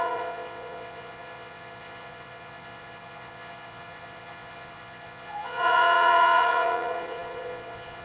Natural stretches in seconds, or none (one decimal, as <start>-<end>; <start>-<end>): none